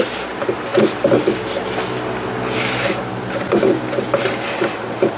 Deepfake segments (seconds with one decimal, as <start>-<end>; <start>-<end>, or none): none